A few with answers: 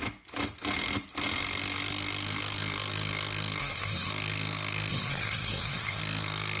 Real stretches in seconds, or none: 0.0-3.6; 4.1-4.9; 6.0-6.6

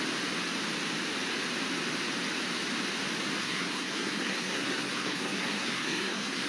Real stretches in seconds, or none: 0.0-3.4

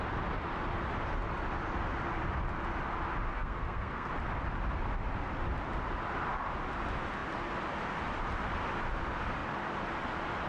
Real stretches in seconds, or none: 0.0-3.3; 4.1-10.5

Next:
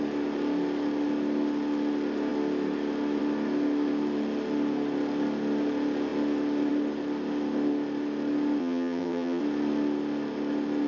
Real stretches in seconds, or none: 0.0-8.6; 9.4-10.9